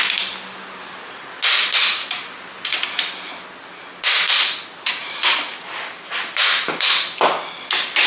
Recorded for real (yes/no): yes